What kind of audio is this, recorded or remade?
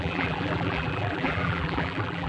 remade